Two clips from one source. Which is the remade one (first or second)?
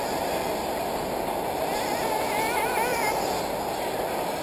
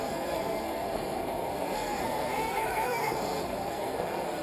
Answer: second